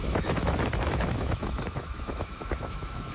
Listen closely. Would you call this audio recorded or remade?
remade